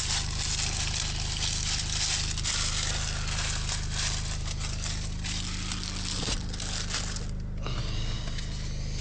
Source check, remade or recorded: recorded